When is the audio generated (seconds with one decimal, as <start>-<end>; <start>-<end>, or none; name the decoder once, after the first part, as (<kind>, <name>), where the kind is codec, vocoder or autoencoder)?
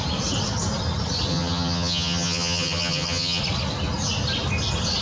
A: 1.3-3.4 (vocoder, HiFi-GAN)